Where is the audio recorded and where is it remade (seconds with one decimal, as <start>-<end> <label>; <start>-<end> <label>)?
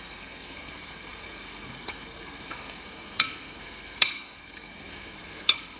0.0-5.8 remade